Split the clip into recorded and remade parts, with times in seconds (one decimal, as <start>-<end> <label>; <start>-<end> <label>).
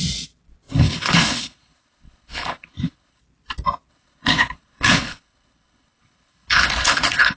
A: 0.0-0.7 recorded; 0.7-3.2 remade; 3.2-3.9 recorded; 3.9-7.4 remade